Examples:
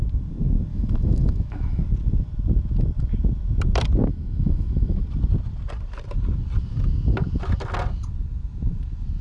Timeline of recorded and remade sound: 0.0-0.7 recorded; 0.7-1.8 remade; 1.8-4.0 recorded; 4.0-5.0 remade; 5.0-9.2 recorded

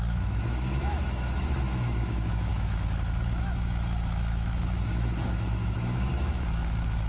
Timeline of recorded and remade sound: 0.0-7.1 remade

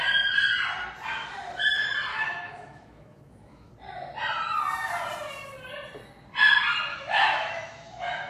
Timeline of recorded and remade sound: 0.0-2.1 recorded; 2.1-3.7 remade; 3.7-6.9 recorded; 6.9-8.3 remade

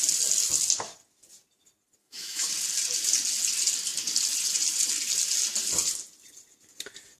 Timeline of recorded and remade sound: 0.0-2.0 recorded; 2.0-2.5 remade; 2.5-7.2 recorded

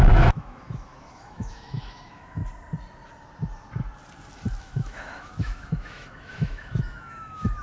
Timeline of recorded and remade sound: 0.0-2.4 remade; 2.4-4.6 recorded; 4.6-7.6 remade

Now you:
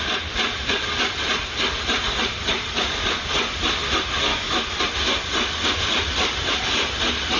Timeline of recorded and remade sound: 0.0-4.3 recorded; 4.3-4.8 remade; 4.8-7.4 recorded